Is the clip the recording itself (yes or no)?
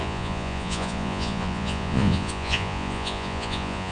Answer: no